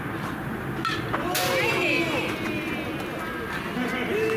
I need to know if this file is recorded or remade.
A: recorded